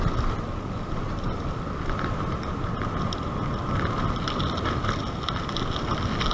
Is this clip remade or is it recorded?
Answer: recorded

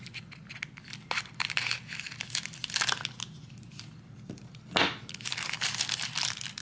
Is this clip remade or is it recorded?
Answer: recorded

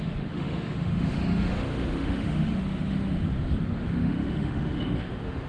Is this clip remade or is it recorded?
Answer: remade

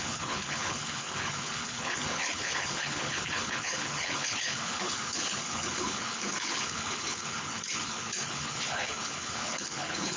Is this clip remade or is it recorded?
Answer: remade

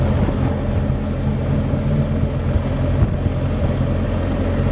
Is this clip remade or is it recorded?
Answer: recorded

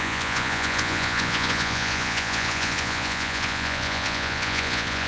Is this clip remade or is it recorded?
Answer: remade